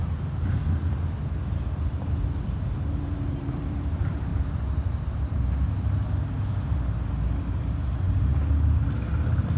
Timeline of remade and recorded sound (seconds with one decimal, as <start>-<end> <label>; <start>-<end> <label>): 0.0-3.0 recorded; 3.0-4.3 remade; 4.3-9.6 recorded